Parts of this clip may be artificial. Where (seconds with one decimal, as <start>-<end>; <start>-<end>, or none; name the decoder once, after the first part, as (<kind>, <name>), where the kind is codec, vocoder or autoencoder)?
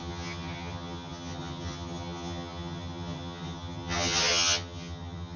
0.0-5.4 (vocoder, HiFi-GAN)